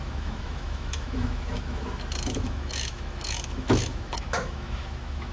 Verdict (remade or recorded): remade